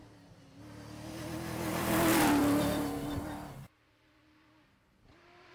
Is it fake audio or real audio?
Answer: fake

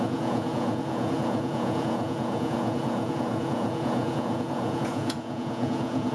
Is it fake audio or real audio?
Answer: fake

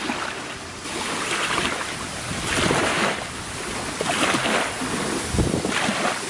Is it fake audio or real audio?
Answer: real